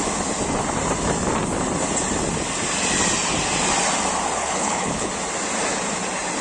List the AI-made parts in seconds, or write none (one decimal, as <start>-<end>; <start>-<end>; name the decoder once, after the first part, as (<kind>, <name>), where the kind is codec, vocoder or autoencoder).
4.4-5.1 (codec, HILCodec)